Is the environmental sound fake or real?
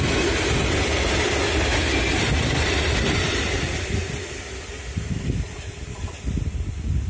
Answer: real